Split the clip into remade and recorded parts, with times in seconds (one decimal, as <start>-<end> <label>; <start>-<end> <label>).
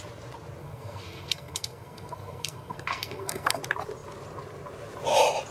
0.0-0.6 recorded; 0.6-3.6 remade; 3.6-5.5 recorded